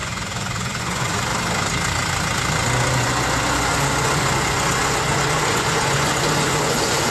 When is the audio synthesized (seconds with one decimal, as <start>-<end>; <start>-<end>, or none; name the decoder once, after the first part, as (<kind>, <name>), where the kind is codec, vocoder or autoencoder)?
0.0-1.3 (vocoder, Vocos); 3.0-7.1